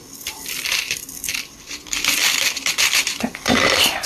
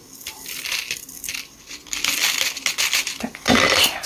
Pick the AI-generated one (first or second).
first